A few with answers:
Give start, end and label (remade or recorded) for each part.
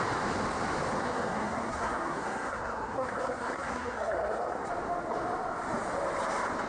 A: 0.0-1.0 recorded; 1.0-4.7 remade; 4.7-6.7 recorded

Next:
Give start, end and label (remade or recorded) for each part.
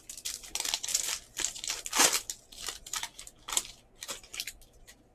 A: 0.0-5.1 recorded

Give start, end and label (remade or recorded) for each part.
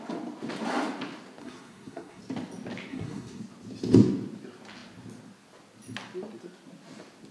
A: 0.0-1.4 recorded; 1.4-2.2 remade; 2.2-2.9 recorded; 2.9-3.4 remade; 3.4-7.3 recorded